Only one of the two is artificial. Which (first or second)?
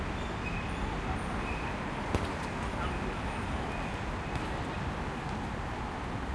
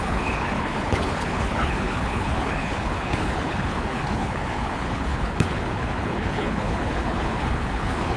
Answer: second